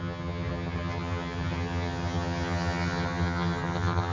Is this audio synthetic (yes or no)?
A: yes